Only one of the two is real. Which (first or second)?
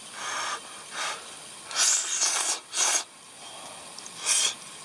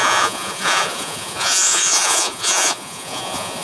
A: first